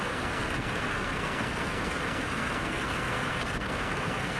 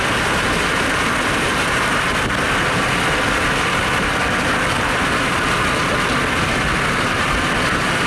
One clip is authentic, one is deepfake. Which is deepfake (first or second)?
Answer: first